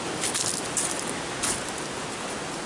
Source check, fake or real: real